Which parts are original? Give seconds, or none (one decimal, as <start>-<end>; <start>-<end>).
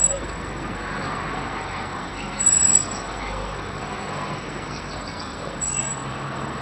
none